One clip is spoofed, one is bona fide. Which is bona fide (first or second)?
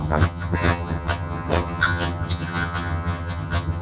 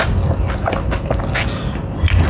second